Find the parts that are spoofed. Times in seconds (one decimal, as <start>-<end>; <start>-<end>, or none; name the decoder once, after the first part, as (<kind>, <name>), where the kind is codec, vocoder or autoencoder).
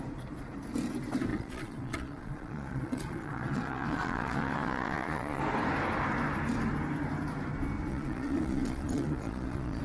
1.3-5.4 (vocoder, Vocos); 7.9-9.8